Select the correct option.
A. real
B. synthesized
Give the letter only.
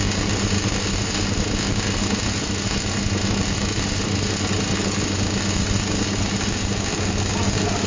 A